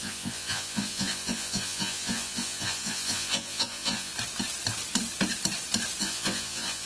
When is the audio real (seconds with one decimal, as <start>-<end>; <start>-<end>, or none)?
4.1-6.0